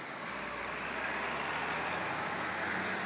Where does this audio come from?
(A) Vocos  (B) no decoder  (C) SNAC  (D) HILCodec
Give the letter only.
B